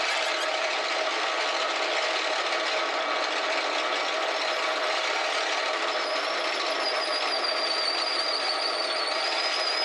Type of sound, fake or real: real